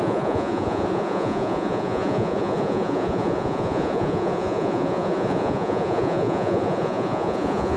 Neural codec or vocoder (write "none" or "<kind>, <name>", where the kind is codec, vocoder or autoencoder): vocoder, Vocos